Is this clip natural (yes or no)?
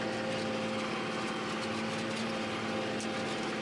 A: yes